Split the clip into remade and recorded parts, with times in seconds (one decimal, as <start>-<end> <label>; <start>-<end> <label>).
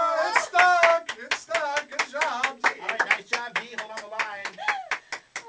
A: 0.0-5.5 recorded